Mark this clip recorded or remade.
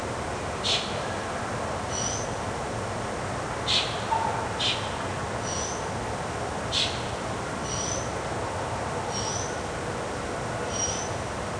recorded